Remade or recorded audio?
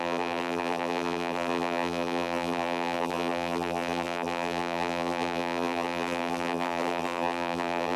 remade